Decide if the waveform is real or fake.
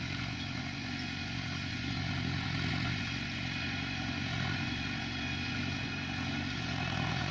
fake